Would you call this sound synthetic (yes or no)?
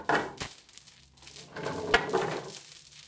no